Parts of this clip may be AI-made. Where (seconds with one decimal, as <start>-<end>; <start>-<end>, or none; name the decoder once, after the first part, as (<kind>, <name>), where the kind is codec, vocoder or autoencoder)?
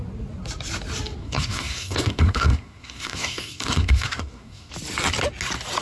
1.2-4.7 (codec, SNAC)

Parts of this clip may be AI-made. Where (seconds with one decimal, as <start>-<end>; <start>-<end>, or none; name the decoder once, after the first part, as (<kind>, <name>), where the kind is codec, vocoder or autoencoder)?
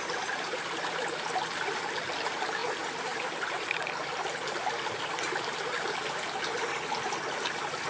none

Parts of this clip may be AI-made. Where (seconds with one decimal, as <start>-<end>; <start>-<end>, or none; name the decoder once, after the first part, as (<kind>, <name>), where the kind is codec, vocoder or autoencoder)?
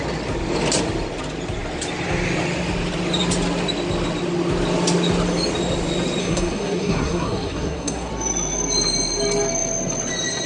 6.2-8.1 (codec, SNAC)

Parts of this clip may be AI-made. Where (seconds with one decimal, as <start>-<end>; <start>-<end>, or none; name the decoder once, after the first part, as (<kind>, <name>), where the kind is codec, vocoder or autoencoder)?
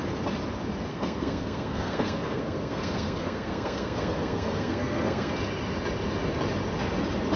0.9-5.3 (codec, SNAC)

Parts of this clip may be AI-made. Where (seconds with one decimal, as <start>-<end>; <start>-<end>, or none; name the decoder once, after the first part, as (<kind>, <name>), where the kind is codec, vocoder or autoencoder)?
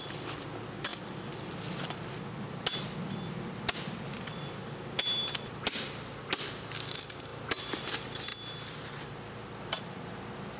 none